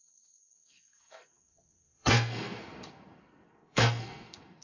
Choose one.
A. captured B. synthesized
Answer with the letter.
B